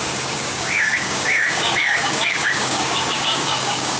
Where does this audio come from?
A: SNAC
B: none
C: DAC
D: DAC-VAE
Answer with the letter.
C